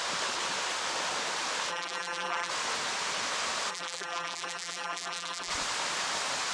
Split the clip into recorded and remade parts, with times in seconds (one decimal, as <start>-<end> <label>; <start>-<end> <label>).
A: 0.0-1.7 recorded; 1.7-2.5 remade; 2.5-3.7 recorded; 3.7-5.5 remade; 5.5-6.5 recorded